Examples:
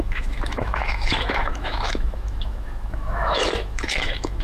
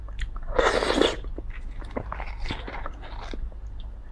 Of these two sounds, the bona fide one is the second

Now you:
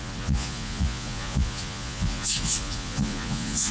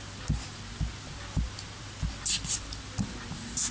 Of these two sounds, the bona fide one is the second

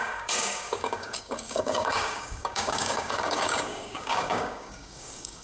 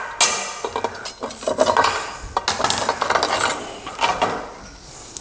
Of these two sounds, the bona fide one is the second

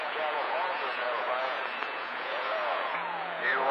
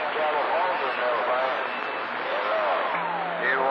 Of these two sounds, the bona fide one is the second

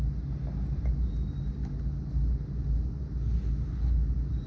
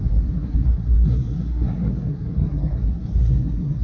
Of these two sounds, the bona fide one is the first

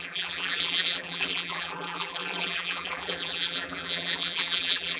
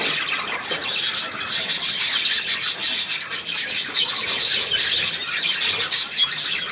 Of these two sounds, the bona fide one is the second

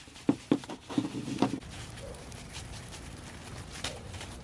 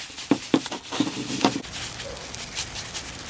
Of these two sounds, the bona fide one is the second